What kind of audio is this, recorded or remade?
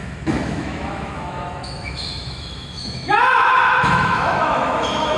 remade